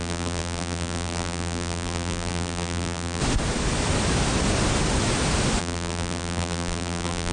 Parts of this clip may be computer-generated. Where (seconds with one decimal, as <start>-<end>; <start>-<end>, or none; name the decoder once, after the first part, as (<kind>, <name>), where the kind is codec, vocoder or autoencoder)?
0.0-3.2 (vocoder, BigVGAN v2); 5.6-7.3